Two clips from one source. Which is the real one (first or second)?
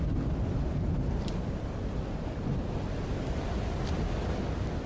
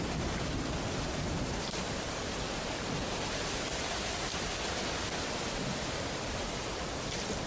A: first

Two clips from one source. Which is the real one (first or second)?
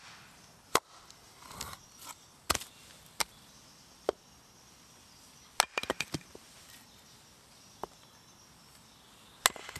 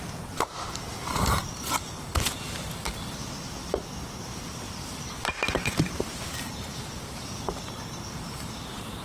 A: first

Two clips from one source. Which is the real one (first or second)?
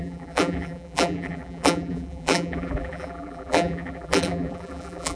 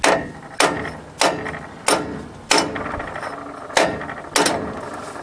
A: second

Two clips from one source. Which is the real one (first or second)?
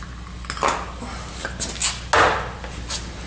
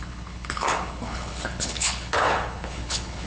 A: first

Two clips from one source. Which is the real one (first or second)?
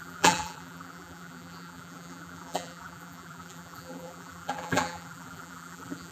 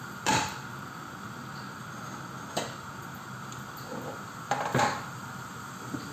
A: second